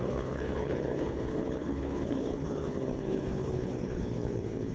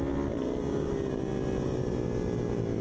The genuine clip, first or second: second